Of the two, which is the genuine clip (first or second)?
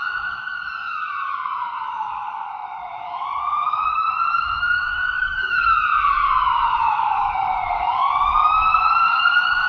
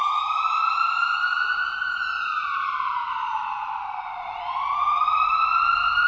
second